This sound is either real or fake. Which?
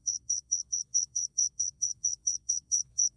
fake